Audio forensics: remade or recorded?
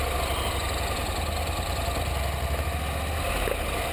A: recorded